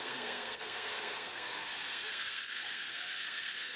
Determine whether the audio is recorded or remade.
remade